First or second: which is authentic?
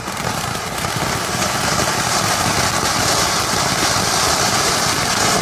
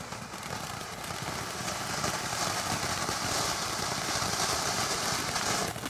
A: first